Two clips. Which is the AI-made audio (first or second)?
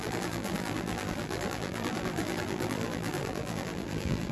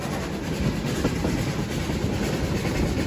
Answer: first